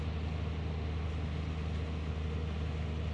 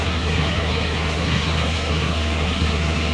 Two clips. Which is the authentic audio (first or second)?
first